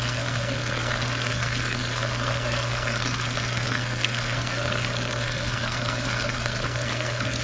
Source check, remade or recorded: remade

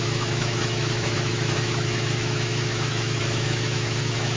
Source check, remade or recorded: remade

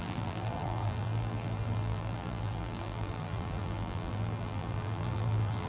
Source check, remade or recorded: remade